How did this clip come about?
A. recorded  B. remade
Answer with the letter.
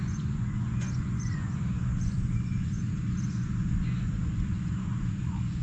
B